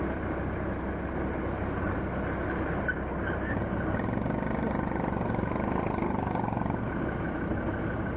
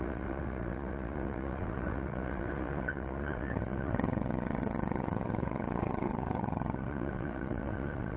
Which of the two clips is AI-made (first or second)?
second